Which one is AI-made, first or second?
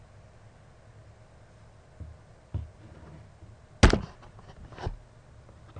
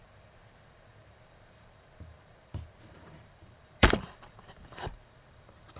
second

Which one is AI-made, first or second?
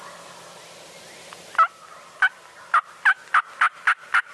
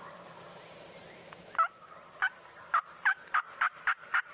second